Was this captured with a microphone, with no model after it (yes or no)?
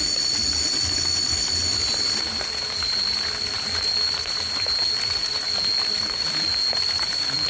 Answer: yes